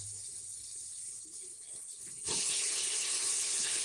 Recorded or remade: remade